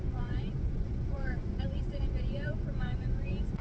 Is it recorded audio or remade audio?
remade